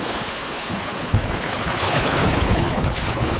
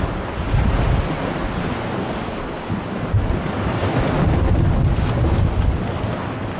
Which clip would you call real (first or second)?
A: second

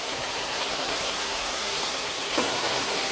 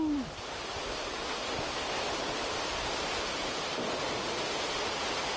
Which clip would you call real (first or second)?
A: second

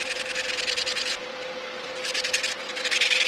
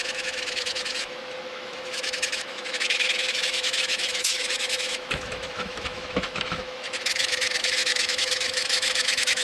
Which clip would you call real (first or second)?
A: first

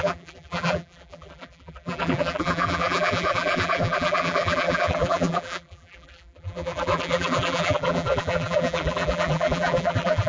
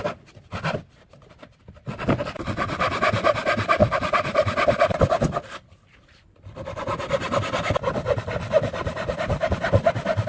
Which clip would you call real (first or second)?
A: second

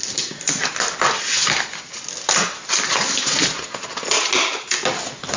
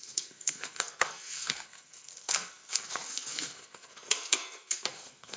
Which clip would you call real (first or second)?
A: first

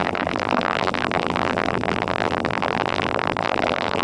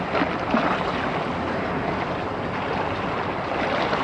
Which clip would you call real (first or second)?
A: second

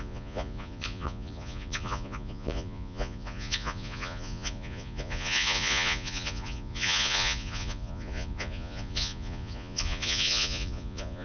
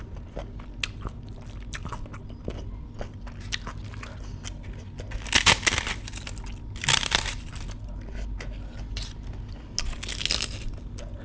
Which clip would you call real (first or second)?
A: second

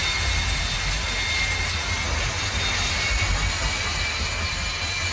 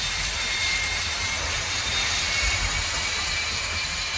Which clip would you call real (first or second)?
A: first